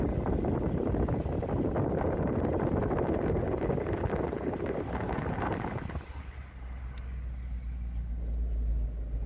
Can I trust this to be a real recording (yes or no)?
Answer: yes